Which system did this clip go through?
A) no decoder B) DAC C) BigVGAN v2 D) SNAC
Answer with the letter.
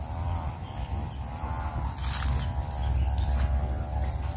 A